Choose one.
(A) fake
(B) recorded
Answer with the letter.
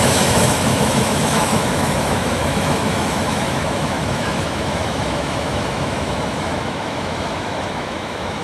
A